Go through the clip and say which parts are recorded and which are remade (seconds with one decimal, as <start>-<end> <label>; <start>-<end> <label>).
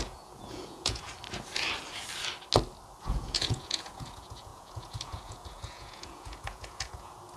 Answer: 0.0-1.1 remade; 1.1-3.0 recorded; 3.0-7.4 remade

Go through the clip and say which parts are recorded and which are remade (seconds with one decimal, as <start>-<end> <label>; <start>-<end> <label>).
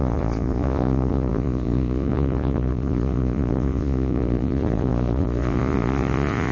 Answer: 0.0-6.5 remade